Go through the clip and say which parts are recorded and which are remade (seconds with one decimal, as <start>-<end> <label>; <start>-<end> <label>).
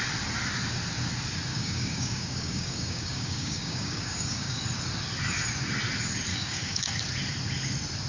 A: 0.0-1.5 recorded; 1.5-4.6 remade; 4.6-6.3 recorded; 6.3-6.9 remade; 6.9-8.1 recorded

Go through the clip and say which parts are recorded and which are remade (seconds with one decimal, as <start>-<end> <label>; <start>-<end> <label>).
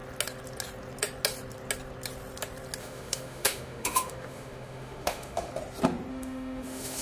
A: 0.0-2.8 recorded; 2.8-5.5 remade; 5.5-6.1 recorded; 6.1-7.0 remade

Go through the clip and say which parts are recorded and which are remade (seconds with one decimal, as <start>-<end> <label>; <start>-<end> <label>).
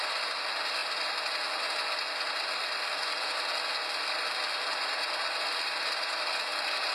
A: 0.0-6.9 recorded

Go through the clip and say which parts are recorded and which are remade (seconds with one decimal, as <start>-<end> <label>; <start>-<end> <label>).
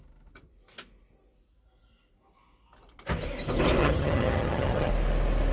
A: 0.0-3.8 recorded; 3.8-4.9 remade; 4.9-5.5 recorded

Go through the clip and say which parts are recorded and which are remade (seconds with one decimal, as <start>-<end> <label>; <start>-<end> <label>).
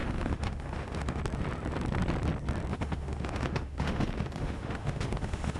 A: 0.0-1.2 remade; 1.2-2.7 recorded; 2.7-5.6 remade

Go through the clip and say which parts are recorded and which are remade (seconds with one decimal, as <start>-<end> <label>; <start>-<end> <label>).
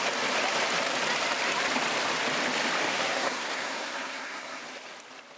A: 0.0-2.9 recorded; 2.9-4.6 remade; 4.6-5.4 recorded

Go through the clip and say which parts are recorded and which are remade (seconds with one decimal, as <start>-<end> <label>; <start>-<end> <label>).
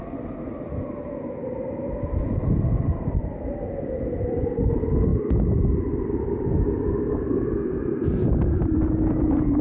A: 0.0-9.6 recorded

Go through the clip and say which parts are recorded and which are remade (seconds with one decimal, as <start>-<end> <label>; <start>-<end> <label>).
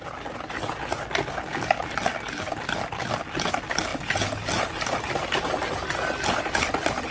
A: 0.0-7.1 recorded